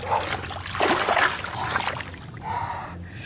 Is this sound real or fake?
real